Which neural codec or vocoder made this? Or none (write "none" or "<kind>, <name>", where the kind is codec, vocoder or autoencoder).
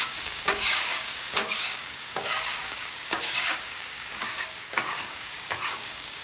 codec, DAC